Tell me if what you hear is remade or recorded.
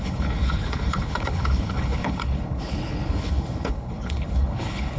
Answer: remade